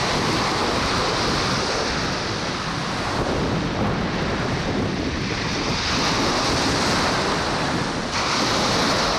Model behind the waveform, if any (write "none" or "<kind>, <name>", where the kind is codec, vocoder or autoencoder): none